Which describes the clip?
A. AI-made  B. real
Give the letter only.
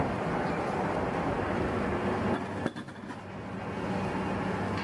B